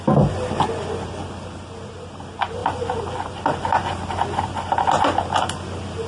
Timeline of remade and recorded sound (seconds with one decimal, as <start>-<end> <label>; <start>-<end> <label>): 0.0-6.1 recorded